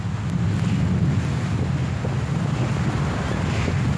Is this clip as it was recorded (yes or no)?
yes